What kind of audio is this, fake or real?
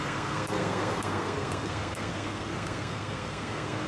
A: fake